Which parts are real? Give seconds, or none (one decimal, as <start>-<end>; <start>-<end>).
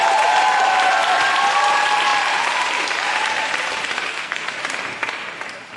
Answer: 0.0-4.1; 4.6-5.8